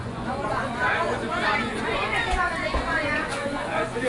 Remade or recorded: remade